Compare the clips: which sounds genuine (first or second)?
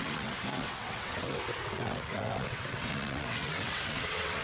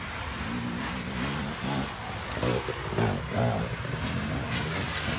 second